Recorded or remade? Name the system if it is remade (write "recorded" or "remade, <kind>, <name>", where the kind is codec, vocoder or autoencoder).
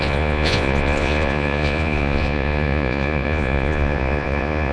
remade, vocoder, Vocos